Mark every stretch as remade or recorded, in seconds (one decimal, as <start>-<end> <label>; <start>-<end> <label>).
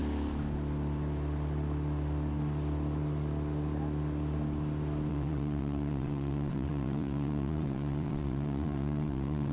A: 0.0-5.1 recorded; 5.1-9.5 remade